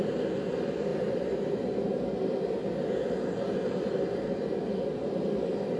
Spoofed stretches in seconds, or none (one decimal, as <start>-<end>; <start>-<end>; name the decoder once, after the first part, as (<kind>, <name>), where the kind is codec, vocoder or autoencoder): none